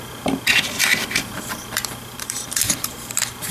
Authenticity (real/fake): fake